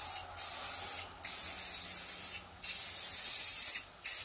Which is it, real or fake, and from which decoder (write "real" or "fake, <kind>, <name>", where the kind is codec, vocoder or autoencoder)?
real